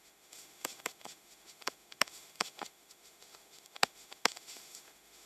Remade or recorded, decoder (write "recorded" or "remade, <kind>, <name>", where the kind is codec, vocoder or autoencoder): remade, autoencoder, DAC-VAE